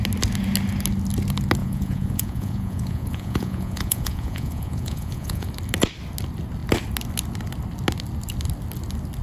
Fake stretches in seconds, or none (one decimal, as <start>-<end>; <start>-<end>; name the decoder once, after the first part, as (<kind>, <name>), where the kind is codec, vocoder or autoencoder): 1.6-5.5 (vocoder, Vocos)